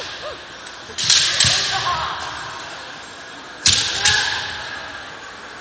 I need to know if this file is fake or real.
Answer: real